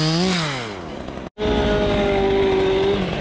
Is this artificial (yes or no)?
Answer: no